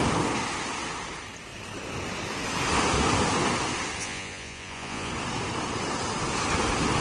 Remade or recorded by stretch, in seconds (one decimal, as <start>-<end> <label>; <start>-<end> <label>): 0.0-4.0 recorded; 4.0-5.1 remade; 5.1-7.0 recorded